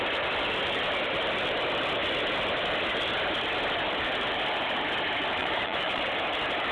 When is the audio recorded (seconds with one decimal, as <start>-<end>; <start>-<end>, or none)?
0.0-5.4; 6.0-6.7